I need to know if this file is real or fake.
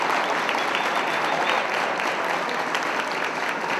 real